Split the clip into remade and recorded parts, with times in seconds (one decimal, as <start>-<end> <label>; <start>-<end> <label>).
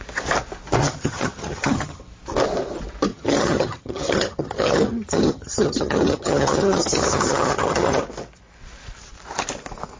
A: 0.0-0.8 recorded; 0.8-2.0 remade; 2.0-3.1 recorded; 3.1-8.0 remade; 8.0-10.0 recorded